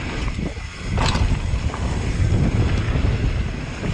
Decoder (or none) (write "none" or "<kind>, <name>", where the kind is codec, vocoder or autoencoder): none